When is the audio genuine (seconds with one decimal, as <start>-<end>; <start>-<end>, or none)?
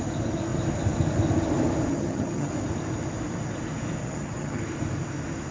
0.0-1.9; 2.5-4.0; 4.6-5.5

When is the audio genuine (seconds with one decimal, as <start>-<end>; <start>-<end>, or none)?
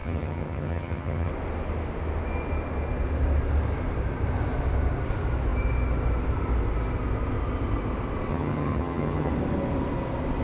1.3-8.3; 9.3-10.4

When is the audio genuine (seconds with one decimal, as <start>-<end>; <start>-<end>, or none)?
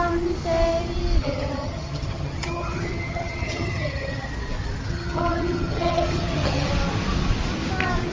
0.0-1.2; 4.3-4.9; 6.7-8.1